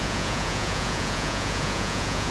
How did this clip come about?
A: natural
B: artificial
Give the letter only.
B